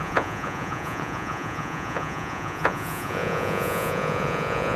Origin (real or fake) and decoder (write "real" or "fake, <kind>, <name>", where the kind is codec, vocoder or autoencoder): fake, vocoder, Vocos